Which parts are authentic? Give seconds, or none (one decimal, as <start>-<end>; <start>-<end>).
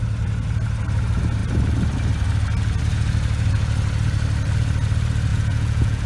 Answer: 0.0-5.3